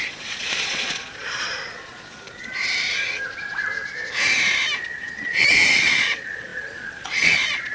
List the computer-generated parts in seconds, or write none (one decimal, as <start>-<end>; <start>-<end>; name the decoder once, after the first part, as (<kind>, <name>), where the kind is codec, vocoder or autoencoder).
0.0-2.6 (vocoder, Vocos); 4.8-7.7